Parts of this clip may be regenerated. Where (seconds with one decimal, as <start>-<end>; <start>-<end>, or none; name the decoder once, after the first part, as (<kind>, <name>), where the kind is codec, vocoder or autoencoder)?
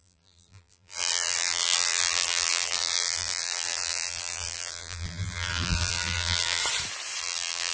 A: 0.0-6.6 (vocoder, BigVGAN v2); 7.2-7.7